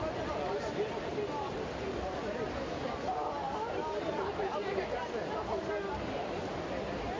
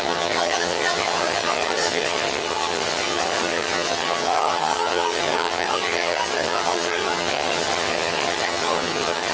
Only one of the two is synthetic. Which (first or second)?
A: second